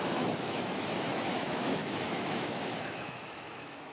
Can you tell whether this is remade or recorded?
remade